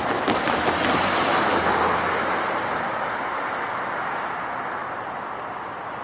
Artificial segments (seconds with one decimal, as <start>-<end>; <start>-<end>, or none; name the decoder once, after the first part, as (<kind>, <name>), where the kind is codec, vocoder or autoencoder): none